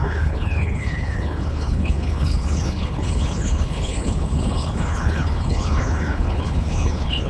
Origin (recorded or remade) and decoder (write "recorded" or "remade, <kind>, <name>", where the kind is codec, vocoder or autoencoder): remade, codec, HILCodec